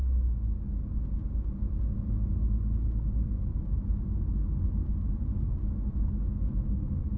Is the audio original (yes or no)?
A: yes